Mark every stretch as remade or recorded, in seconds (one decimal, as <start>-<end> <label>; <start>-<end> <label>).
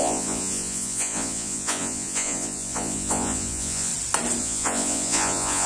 0.0-3.9 remade; 3.9-4.4 recorded; 4.4-5.7 remade